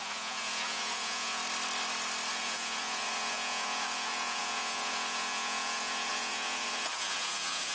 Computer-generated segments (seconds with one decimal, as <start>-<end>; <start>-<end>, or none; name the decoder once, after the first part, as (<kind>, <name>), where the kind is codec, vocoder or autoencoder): 0.0-1.4 (vocoder, Vocos); 2.3-7.7